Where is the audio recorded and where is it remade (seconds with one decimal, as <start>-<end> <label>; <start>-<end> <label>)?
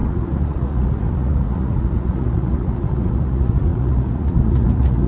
0.0-5.1 remade